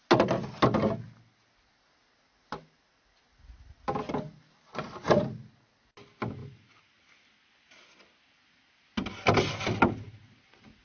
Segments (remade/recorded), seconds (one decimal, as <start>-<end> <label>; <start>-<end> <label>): 0.0-10.8 recorded